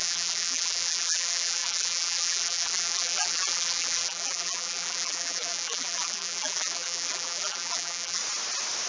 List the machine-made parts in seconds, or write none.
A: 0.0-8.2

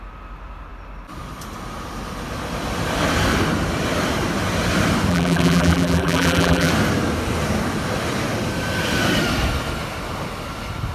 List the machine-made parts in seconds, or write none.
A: 5.1-6.7

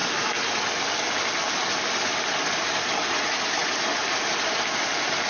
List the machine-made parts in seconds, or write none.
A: 3.6-4.1

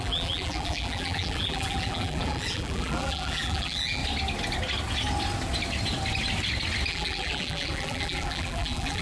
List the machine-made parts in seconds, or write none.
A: 0.0-4.0; 6.9-9.0

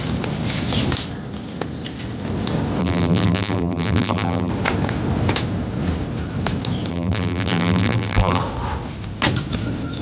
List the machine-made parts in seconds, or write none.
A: 2.8-4.5; 6.9-8.4

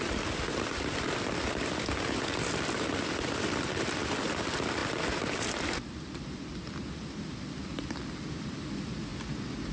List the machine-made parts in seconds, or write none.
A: 0.0-4.8; 5.4-9.1

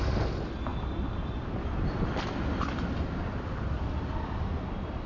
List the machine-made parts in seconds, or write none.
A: 0.7-3.8